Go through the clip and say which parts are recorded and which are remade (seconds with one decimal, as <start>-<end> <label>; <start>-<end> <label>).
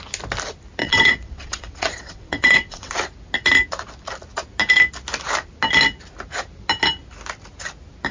0.0-0.8 recorded; 0.8-2.9 remade; 2.9-8.1 recorded